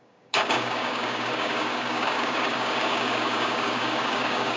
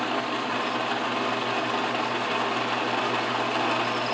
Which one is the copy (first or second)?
first